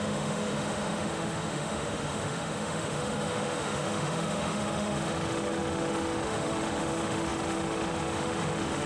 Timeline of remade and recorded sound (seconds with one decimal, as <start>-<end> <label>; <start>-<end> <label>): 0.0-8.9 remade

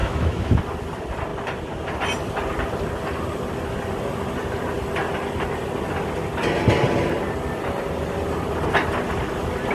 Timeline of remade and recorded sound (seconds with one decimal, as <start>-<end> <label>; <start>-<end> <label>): 0.0-0.6 remade; 0.6-9.7 recorded

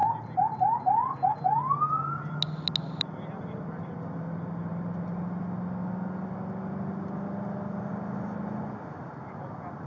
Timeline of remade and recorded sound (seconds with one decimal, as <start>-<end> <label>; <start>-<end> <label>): 0.0-9.9 recorded